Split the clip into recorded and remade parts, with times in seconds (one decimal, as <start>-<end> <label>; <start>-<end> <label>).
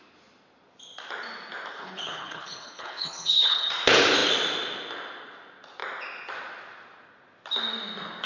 0.0-1.7 recorded; 1.7-3.7 remade; 3.7-8.3 recorded